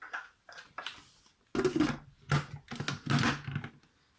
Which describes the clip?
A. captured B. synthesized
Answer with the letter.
A